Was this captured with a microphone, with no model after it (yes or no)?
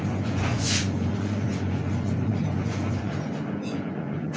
no